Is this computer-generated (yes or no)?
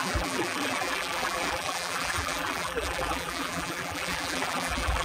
yes